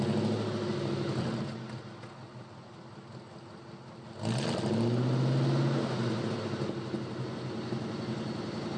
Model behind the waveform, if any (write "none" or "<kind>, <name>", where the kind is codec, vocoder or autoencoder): none